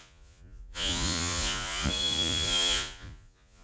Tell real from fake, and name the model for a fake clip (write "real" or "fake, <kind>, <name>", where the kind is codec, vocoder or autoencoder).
fake, vocoder, Vocos